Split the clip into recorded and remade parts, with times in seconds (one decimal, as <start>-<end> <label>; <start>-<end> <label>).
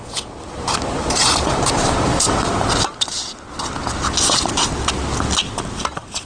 0.0-3.2 remade; 3.2-5.6 recorded; 5.6-6.3 remade